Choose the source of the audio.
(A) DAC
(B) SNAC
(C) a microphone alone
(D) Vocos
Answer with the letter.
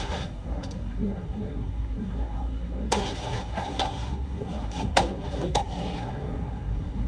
B